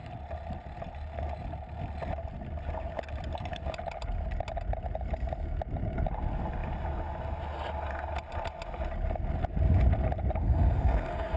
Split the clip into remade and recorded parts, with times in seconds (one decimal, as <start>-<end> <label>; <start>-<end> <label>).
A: 0.0-10.4 recorded; 10.4-11.4 remade